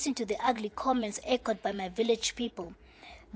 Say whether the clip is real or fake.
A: fake